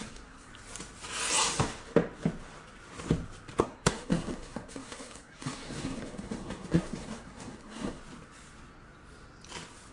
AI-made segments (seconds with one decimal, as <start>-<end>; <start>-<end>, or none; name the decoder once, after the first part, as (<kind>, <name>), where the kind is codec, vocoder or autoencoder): 0.0-0.5 (codec, SNAC); 3.6-8.0